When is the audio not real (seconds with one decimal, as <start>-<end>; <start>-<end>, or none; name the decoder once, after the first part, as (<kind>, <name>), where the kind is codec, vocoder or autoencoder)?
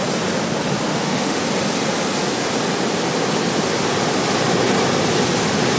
0.9-1.4 (autoencoder, DAC-VAE)